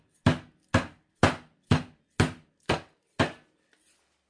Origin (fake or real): real